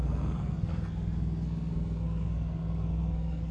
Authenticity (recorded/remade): remade